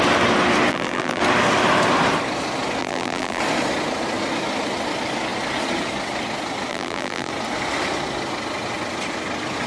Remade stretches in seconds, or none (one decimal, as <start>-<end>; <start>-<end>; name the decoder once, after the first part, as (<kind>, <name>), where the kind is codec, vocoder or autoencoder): 0.7-1.2 (vocoder, BigVGAN v2); 2.8-3.4; 6.7-7.3